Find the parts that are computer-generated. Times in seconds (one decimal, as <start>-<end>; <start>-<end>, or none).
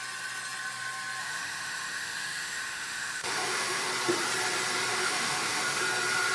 1.2-3.9; 4.9-5.8